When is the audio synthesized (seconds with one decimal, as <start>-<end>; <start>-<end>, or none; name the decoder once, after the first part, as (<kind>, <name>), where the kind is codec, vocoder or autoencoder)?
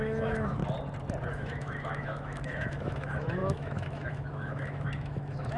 0.0-0.6 (autoencoder, DAC-VAE); 1.3-5.6